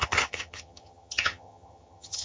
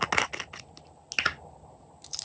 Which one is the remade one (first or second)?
first